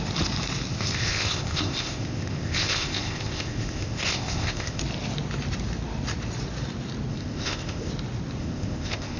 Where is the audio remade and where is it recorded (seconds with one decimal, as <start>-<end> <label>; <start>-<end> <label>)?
0.0-0.7 recorded; 0.7-4.8 remade; 4.8-7.1 recorded; 7.1-7.9 remade; 7.9-8.4 recorded; 8.4-9.2 remade